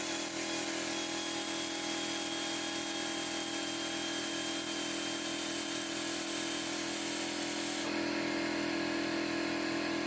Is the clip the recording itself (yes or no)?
yes